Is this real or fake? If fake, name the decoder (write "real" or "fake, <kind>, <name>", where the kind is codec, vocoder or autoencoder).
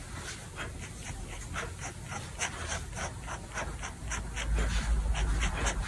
real